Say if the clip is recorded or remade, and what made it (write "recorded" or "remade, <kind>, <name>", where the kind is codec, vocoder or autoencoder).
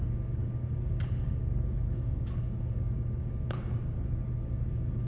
remade, codec, DAC